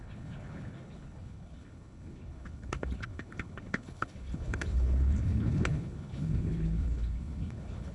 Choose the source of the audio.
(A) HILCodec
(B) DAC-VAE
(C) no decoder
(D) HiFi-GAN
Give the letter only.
A